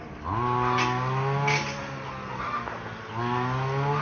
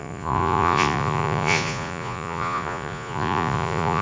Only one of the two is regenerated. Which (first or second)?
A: second